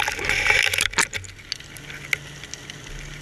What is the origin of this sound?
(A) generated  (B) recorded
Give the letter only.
B